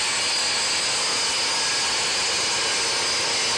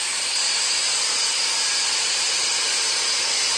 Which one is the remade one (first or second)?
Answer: second